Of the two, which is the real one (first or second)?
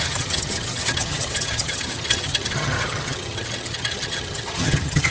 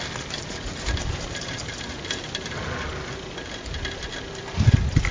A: second